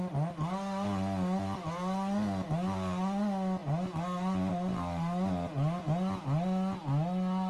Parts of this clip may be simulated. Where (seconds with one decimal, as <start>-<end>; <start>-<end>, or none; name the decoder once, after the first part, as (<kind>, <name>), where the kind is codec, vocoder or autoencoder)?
none